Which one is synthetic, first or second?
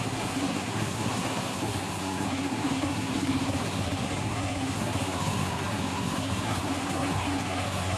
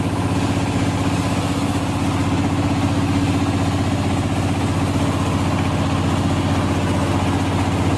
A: first